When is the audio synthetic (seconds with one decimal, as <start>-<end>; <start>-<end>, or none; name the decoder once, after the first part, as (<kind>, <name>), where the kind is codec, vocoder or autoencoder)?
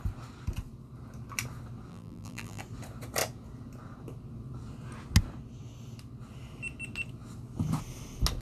1.9-2.6 (vocoder, BigVGAN v2)